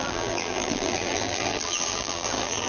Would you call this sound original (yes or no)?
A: no